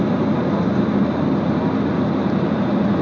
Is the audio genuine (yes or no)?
yes